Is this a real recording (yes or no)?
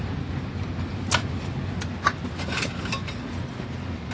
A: yes